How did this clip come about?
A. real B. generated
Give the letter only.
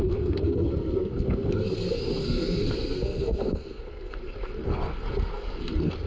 B